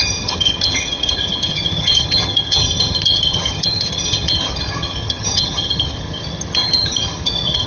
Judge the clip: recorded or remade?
remade